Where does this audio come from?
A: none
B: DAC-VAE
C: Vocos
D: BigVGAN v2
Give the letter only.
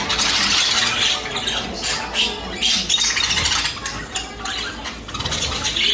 A